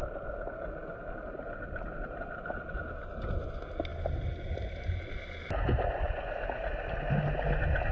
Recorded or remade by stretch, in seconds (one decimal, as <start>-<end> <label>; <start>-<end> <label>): 0.0-7.9 recorded